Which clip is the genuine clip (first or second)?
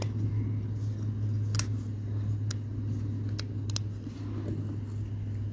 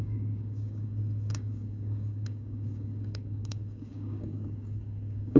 first